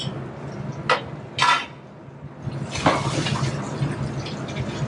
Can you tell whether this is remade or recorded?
recorded